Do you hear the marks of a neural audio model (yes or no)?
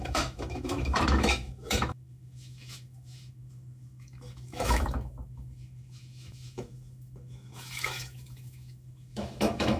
yes